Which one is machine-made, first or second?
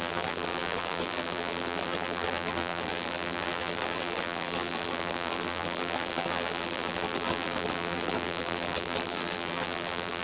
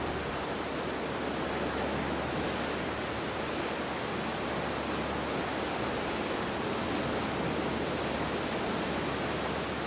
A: first